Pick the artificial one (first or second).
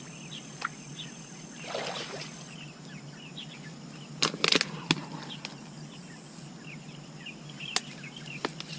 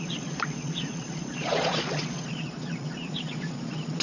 second